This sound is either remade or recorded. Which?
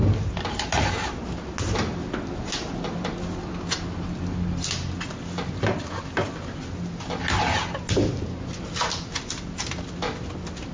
recorded